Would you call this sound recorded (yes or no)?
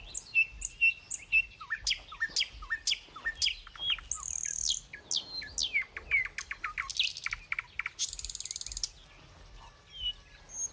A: yes